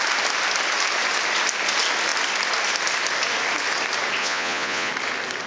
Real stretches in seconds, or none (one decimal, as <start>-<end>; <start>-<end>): 0.0-4.2; 4.9-5.5